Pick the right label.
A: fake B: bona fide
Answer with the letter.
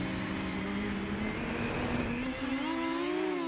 B